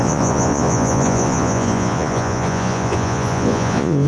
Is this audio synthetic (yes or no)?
yes